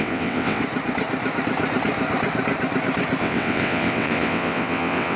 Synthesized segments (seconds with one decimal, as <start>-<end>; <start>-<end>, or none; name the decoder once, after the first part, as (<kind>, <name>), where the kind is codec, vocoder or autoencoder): 0.0-0.6 (vocoder, WaveNeXt); 3.2-5.2